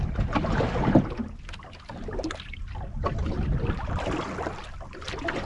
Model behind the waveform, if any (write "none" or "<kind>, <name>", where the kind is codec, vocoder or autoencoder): none